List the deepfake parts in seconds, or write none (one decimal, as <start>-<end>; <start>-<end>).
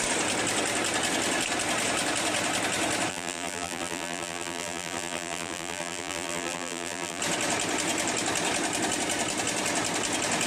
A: 3.1-7.2